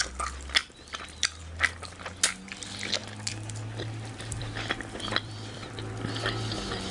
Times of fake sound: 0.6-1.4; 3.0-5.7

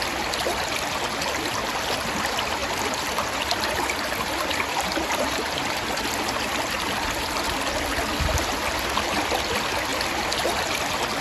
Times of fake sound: 2.6-6.1; 9.9-11.2